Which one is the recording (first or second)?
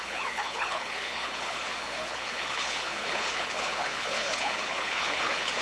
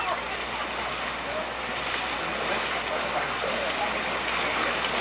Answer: second